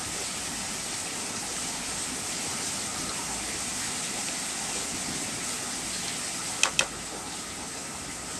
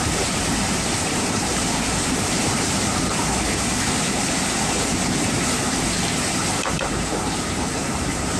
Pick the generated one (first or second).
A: second